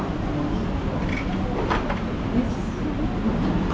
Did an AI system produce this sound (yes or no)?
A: no